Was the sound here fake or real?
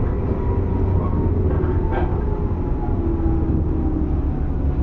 real